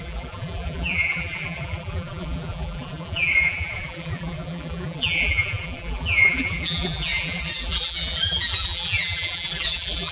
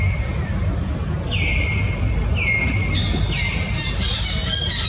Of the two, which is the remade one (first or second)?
first